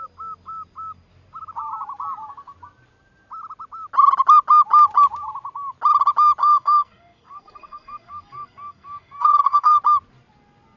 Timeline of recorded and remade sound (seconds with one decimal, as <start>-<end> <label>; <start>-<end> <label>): 0.0-6.4 recorded; 6.4-9.8 remade; 9.8-10.8 recorded